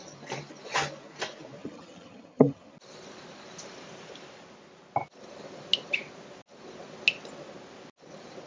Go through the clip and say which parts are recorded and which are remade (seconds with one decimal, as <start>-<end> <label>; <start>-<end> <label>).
0.0-1.6 recorded; 1.6-2.7 remade; 2.7-8.5 recorded